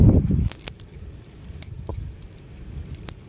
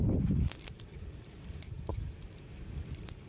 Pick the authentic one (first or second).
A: first